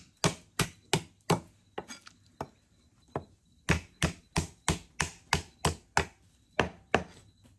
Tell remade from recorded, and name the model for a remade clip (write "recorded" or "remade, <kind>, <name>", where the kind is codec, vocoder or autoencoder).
recorded